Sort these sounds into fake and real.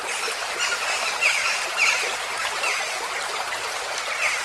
real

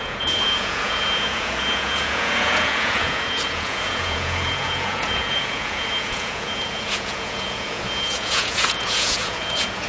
fake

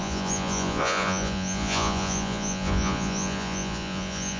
fake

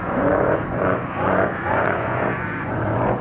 fake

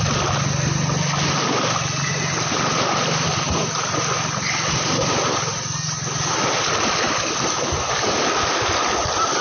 real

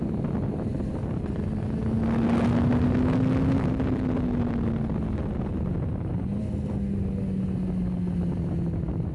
real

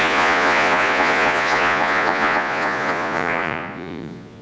fake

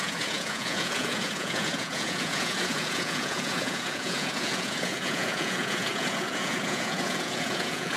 fake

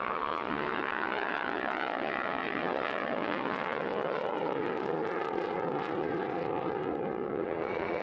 fake